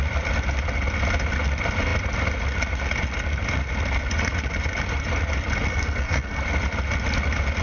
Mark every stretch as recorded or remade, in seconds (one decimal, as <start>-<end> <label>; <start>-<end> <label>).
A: 0.0-5.7 recorded; 5.7-6.4 remade; 6.4-7.6 recorded